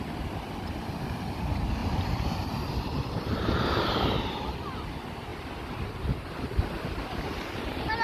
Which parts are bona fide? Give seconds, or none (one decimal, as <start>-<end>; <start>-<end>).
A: 0.0-1.8; 4.2-5.3; 6.2-8.0